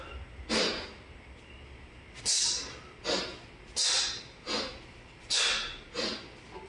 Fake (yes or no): no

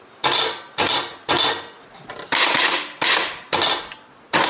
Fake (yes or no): no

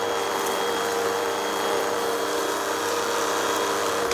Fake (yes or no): yes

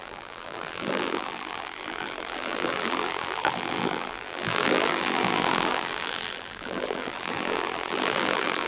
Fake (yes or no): yes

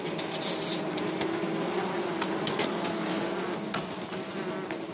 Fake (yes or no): no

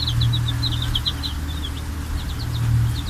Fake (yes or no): no